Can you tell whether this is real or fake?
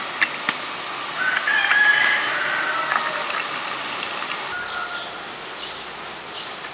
real